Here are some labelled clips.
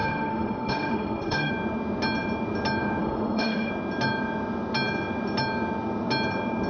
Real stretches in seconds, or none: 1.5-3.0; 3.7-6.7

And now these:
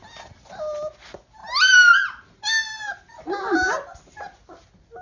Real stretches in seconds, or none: 0.0-5.0

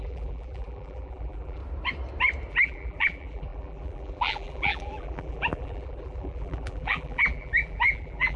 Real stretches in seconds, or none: 1.6-2.5

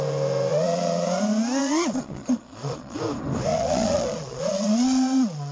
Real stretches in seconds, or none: 0.0-0.5; 1.2-1.6; 3.0-3.5

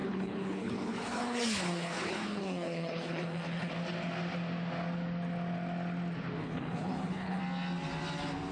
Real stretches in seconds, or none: 3.7-6.4; 7.4-8.5

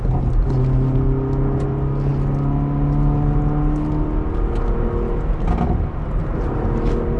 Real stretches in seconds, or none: 0.0-7.2

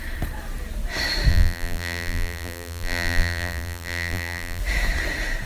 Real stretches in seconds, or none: 0.0-1.3; 4.6-5.5

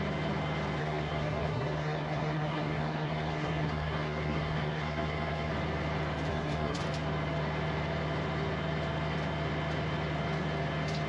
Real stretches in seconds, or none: 0.0-0.8; 5.5-6.3; 6.8-11.1